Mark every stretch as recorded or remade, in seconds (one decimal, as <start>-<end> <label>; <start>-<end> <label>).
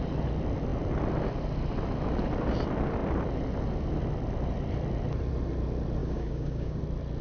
0.0-6.0 recorded; 6.0-6.8 remade; 6.8-7.2 recorded